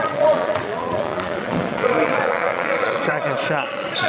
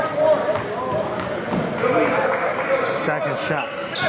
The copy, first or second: first